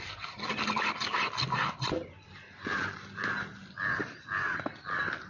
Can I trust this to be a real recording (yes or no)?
yes